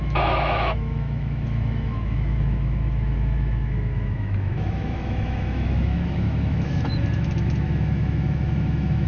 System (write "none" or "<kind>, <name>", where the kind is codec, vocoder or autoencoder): autoencoder, DAC-VAE